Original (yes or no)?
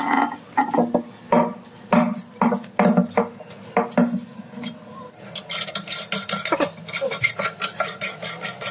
yes